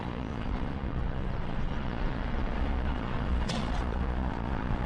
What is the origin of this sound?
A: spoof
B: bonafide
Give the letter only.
A